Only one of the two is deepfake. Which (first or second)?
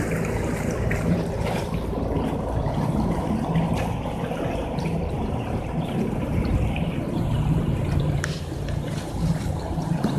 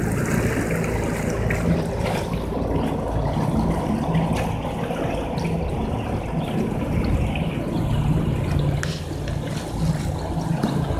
first